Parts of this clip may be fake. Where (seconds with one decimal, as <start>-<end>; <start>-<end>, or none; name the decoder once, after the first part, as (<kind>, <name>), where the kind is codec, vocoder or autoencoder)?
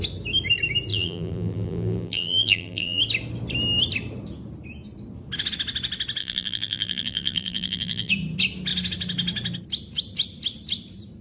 0.9-3.0 (vocoder, BigVGAN v2); 6.2-8.1